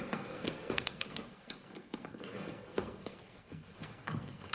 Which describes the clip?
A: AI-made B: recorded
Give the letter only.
A